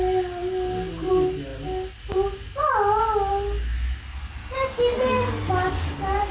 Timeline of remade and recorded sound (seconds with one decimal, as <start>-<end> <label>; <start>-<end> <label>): 0.0-6.3 recorded